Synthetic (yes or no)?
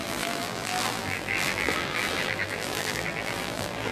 yes